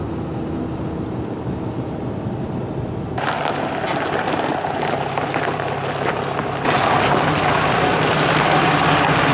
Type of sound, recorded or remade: recorded